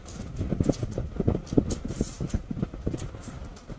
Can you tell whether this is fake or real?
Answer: real